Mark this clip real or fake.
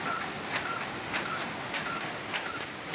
real